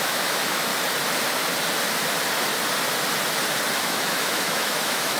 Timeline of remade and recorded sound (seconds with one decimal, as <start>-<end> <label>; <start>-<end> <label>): 0.0-0.7 remade; 0.7-3.8 recorded; 3.8-5.2 remade